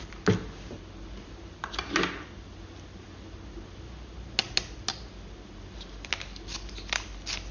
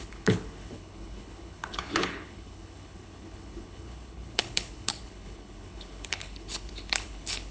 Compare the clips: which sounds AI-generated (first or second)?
second